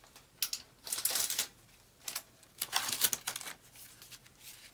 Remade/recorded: recorded